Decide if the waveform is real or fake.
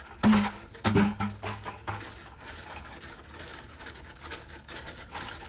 fake